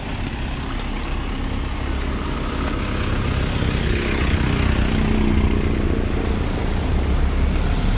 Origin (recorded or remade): recorded